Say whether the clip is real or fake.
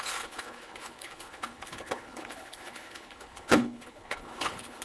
fake